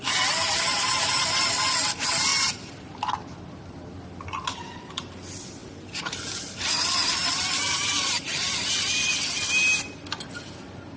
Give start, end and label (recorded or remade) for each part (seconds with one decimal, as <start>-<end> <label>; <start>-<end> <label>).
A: 0.0-5.6 recorded; 5.6-8.8 remade; 8.8-11.0 recorded